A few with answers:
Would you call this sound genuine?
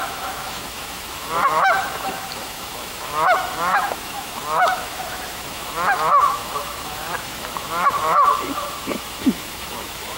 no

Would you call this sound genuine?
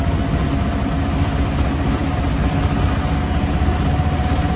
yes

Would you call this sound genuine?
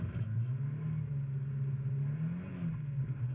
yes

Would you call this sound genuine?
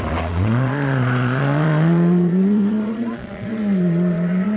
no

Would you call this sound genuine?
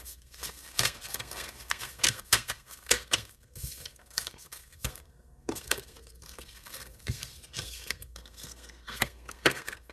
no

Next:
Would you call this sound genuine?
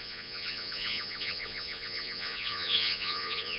no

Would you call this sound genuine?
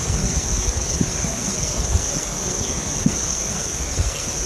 no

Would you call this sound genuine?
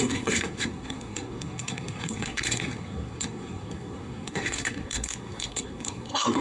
no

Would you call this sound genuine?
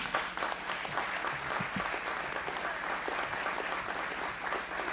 yes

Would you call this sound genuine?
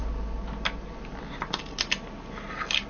yes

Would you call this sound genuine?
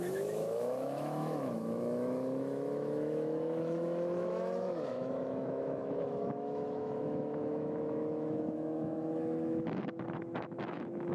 no